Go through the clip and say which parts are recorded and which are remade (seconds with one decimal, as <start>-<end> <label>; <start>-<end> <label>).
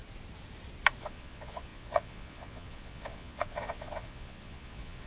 0.0-1.0 recorded; 1.0-5.1 remade